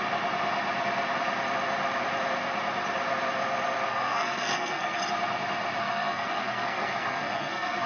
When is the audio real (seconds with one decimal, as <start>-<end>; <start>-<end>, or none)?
0.0-3.9; 5.0-5.8